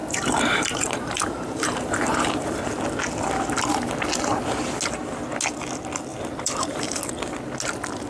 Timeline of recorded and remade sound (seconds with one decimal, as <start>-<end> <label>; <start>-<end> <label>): 0.0-2.6 remade; 2.6-6.1 recorded; 6.1-7.0 remade; 7.0-8.1 recorded